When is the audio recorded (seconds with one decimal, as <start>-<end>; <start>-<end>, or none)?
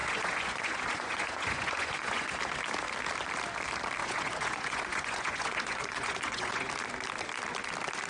2.4-4.0; 6.7-8.1